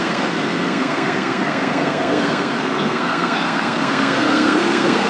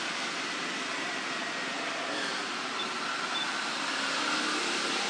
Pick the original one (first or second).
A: second